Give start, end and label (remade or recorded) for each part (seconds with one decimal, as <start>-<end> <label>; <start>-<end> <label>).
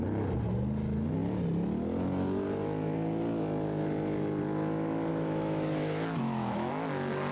0.0-5.1 recorded; 5.1-6.7 remade; 6.7-7.3 recorded